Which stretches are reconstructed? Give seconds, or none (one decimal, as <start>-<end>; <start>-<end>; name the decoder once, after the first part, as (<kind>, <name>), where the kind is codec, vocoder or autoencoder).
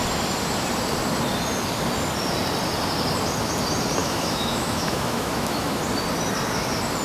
4.0-5.8 (autoencoder, DAC-VAE)